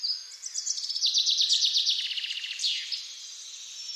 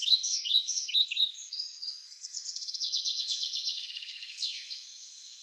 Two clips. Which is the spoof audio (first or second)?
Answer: second